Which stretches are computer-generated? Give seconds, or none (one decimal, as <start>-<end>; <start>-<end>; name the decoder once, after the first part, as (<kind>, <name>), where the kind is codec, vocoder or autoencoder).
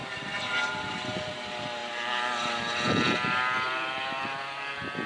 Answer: 0.0-5.1 (vocoder, BigVGAN v2)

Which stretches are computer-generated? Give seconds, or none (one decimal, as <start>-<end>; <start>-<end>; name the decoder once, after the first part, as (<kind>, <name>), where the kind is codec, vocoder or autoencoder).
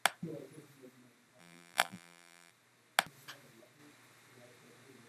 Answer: 1.4-2.5 (vocoder, BigVGAN v2)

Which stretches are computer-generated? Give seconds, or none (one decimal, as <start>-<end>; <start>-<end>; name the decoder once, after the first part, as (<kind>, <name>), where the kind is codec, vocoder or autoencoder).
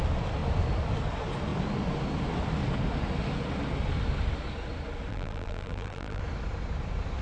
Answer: 5.1-6.2 (vocoder, BigVGAN v2)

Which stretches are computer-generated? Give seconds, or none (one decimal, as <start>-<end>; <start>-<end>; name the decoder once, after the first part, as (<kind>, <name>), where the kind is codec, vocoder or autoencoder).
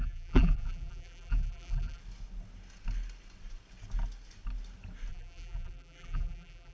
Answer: 0.0-2.0 (vocoder, BigVGAN v2); 5.1-6.7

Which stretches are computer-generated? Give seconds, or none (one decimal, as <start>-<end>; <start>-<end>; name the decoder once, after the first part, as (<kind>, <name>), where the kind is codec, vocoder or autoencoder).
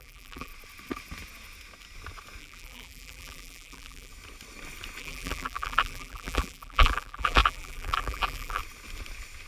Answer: 0.0-0.5 (vocoder, BigVGAN v2); 2.4-4.1; 5.0-8.6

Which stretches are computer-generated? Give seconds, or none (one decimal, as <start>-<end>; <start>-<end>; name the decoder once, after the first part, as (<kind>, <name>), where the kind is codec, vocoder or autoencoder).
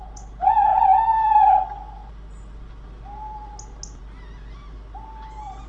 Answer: none